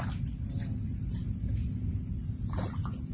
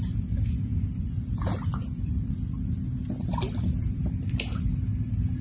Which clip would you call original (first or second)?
first